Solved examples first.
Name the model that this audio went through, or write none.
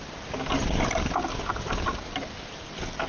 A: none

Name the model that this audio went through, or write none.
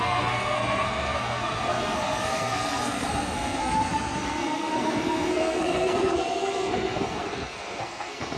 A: codec, SNAC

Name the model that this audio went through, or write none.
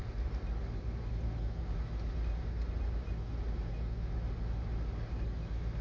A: none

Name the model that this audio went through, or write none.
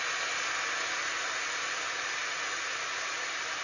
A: none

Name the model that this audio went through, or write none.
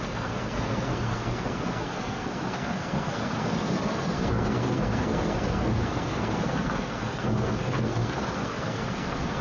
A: codec, SNAC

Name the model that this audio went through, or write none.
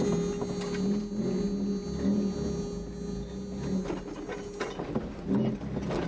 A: none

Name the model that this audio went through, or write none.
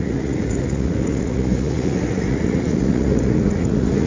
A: vocoder, Vocos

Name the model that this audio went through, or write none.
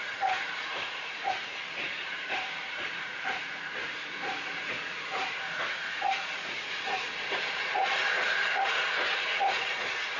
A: vocoder, Vocos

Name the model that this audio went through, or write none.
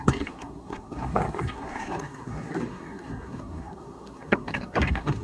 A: codec, SNAC